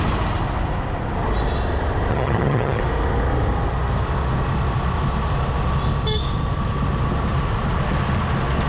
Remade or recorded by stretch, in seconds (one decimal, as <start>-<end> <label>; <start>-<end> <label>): 0.0-2.1 recorded; 2.1-2.8 remade; 2.8-8.7 recorded